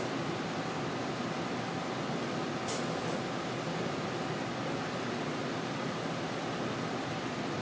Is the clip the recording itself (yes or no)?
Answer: yes